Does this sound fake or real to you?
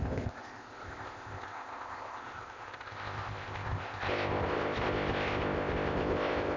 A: fake